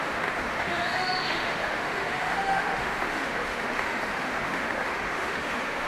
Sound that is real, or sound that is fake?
fake